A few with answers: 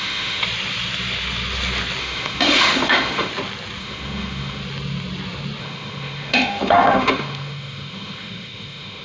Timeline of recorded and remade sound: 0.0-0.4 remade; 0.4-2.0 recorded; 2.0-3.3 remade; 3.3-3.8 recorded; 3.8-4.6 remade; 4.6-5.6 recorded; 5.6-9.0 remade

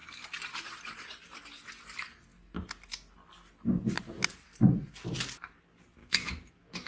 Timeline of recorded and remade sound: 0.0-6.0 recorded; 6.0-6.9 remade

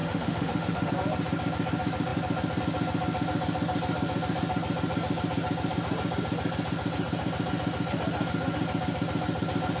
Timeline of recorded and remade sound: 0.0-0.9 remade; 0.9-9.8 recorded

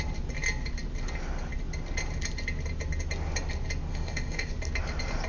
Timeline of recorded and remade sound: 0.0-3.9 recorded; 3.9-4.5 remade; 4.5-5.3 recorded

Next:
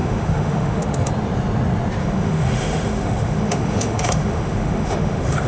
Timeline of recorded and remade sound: 0.0-1.1 remade; 1.1-2.0 recorded; 2.0-5.5 remade

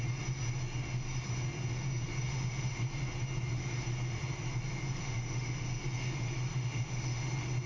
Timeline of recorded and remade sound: 0.0-2.3 recorded; 2.3-2.8 remade; 2.8-5.0 recorded; 5.0-5.8 remade; 5.8-6.5 recorded; 6.5-7.3 remade; 7.3-7.7 recorded